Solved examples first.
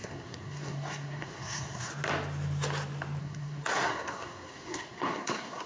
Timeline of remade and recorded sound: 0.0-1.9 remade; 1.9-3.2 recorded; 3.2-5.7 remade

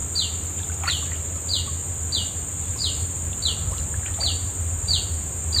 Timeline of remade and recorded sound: 0.0-5.6 recorded

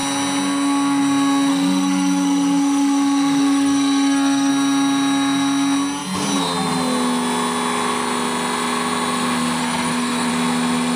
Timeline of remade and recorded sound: 0.0-1.5 recorded; 1.5-4.5 remade; 4.5-9.6 recorded; 9.6-10.3 remade; 10.3-11.0 recorded